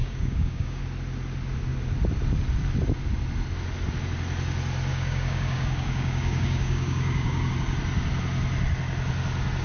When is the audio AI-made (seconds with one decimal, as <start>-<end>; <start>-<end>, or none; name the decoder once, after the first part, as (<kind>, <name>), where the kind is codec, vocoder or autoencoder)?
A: 0.0-0.8 (codec, DAC); 4.9-7.5